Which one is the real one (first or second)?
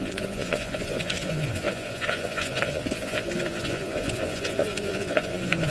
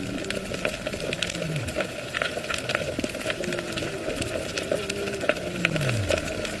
second